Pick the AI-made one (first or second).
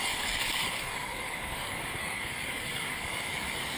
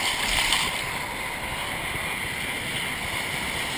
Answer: first